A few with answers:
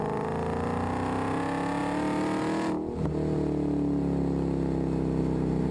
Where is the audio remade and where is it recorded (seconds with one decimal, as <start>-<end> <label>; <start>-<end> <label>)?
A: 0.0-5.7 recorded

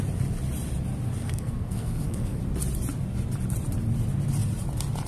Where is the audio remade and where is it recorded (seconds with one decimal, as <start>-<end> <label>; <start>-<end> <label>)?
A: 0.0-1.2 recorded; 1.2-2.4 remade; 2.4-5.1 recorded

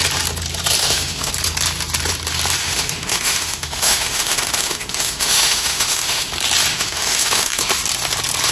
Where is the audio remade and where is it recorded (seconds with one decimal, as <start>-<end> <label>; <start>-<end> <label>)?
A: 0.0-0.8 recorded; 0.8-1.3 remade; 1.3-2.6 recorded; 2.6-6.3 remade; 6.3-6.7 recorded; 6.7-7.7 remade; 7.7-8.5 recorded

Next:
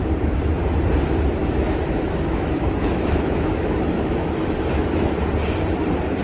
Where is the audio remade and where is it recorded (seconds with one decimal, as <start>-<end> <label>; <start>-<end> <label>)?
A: 0.0-1.4 recorded; 1.4-5.1 remade; 5.1-6.2 recorded

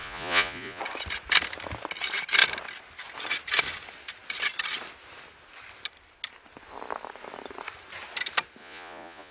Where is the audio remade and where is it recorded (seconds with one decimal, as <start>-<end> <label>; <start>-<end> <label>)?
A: 0.0-0.8 remade; 0.8-8.6 recorded; 8.6-9.3 remade

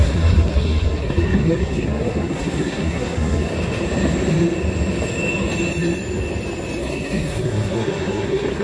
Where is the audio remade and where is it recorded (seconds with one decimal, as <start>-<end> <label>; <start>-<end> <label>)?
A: 0.0-3.5 remade; 3.5-6.8 recorded; 6.8-8.6 remade